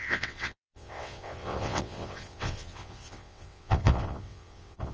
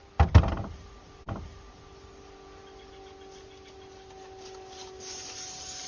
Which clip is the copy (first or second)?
first